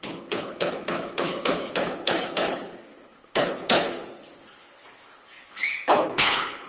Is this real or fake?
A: fake